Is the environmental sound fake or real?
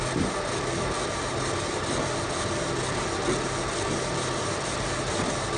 real